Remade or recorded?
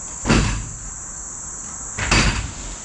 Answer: recorded